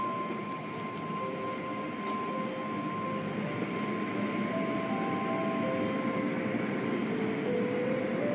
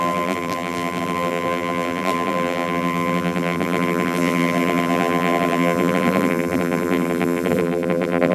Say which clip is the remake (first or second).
second